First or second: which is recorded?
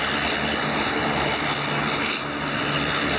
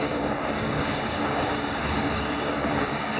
first